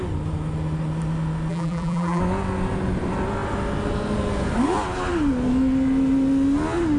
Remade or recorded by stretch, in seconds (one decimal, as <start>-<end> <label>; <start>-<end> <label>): 0.0-1.5 recorded; 1.5-2.2 remade; 2.2-7.0 recorded